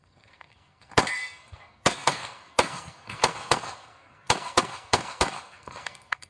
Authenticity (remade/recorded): remade